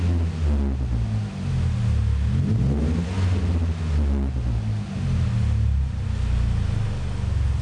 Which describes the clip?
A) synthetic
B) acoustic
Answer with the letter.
B